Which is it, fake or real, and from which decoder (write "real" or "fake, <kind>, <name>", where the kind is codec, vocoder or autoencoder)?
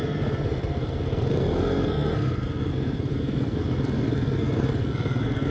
fake, codec, SNAC